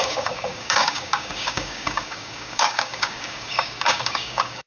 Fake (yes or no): yes